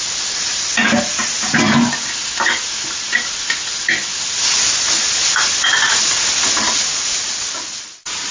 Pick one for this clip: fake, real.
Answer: real